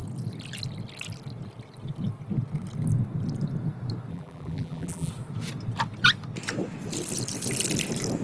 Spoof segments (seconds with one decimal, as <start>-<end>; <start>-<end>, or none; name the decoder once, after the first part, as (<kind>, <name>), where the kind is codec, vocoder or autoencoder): 4.1-5.1 (vocoder, BigVGAN v2)